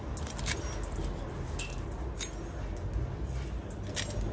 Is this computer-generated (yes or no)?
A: no